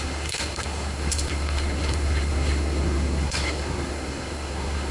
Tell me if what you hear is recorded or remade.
remade